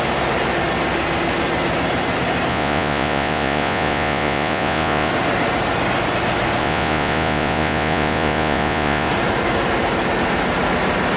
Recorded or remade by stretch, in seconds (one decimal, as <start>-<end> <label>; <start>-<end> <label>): 0.0-2.5 recorded; 2.5-5.1 remade; 5.1-6.6 recorded; 6.6-9.1 remade; 9.1-11.2 recorded